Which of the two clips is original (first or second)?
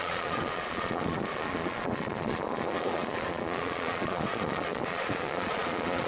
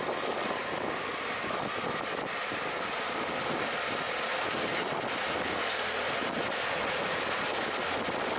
second